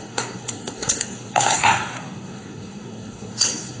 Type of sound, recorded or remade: remade